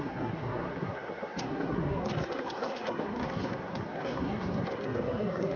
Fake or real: fake